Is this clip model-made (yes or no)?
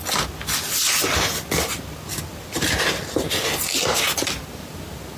no